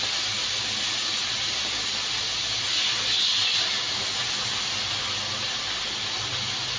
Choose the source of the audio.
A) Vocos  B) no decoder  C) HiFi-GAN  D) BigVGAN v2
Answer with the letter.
B